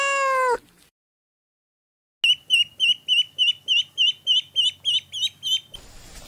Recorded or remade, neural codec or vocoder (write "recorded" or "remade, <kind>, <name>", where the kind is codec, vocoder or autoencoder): recorded